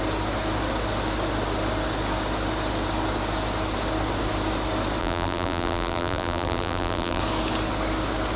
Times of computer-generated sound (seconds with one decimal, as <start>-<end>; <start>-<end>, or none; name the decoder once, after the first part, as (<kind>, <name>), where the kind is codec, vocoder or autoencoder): 5.0-7.2 (vocoder, BigVGAN v2)